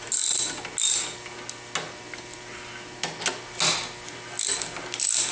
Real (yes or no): yes